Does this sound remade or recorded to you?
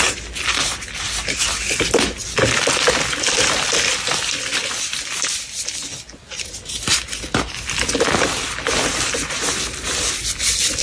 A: recorded